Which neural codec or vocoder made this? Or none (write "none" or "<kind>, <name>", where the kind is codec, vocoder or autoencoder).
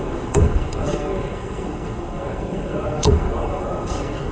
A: codec, SNAC